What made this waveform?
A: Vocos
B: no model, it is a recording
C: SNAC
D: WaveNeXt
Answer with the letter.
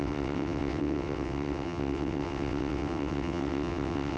D